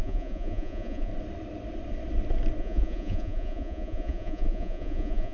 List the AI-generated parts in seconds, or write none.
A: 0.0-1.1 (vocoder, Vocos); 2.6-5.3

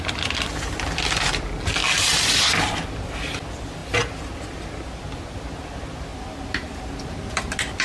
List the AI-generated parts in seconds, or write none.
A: none

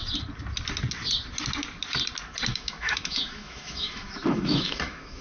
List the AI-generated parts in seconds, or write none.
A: 2.5-5.2 (autoencoder, DAC-VAE)

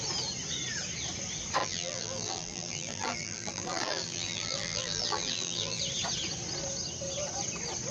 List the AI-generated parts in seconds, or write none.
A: 1.6-5.8 (vocoder, BigVGAN v2)

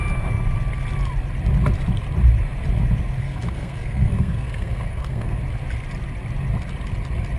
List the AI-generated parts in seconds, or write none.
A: 3.2-5.4 (codec, SNAC)

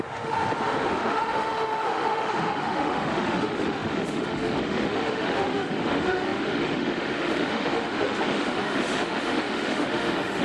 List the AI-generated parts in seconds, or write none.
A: 0.0-10.4 (autoencoder, DAC-VAE)